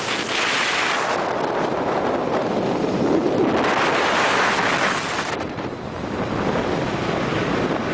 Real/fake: real